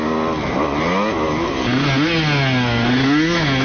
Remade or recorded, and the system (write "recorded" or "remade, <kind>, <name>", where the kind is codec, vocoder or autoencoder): recorded